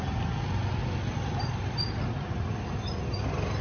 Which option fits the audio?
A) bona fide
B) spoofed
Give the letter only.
A